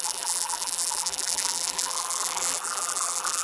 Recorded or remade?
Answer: remade